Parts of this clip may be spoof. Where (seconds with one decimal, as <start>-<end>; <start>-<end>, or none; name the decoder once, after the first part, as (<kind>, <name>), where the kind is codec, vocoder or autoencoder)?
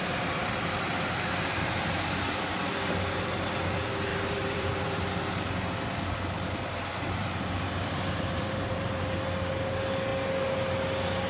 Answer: 4.1-5.0 (vocoder, BigVGAN v2); 7.2-9.1